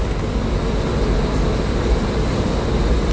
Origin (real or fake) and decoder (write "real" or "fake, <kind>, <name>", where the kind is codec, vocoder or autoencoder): real